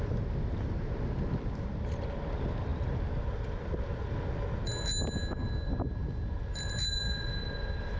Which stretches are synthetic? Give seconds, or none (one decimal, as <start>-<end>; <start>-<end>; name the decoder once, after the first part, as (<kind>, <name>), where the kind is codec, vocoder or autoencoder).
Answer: none